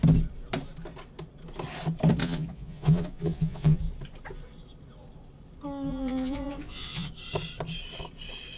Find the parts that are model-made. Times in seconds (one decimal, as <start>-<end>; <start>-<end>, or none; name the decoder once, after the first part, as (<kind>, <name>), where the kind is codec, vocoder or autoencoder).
2.2-3.8 (vocoder, Vocos); 5.9-7.1